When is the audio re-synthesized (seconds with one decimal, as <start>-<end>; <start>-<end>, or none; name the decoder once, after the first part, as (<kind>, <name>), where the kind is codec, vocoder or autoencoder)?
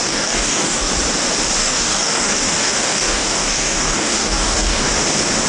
0.0-0.9 (codec, DAC); 1.6-4.9